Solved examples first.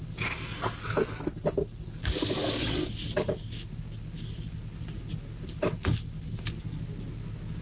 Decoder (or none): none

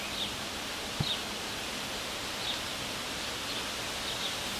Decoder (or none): none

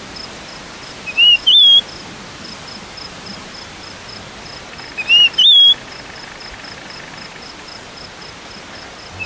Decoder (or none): none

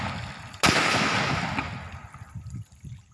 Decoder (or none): none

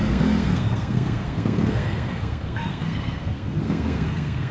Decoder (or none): codec, SNAC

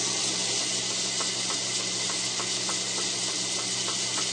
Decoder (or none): none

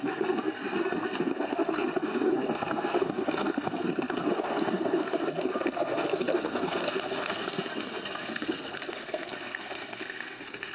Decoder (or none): codec, SNAC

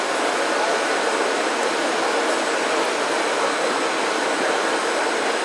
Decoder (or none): none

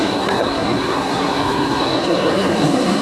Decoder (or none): codec, SNAC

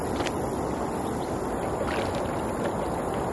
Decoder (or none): none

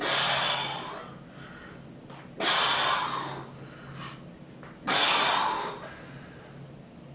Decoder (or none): none